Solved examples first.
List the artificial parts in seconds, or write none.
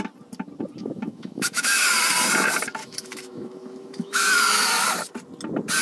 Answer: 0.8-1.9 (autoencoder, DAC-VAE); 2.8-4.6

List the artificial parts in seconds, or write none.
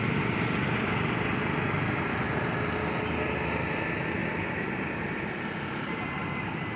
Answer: none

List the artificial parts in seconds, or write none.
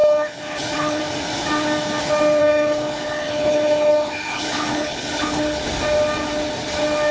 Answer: 0.0-1.0 (codec, HILCodec); 2.4-5.6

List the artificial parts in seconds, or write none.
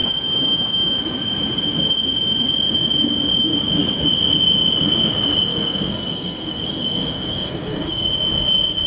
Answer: 0.0-0.9 (codec, DAC); 5.5-8.1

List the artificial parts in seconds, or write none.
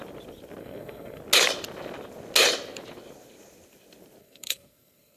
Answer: 0.6-1.2 (codec, SNAC); 4.2-5.2